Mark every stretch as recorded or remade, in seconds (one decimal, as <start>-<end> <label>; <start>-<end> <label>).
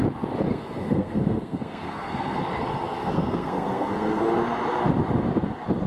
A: 0.0-0.5 recorded; 0.5-2.4 remade; 2.4-3.0 recorded; 3.0-4.2 remade; 4.2-5.9 recorded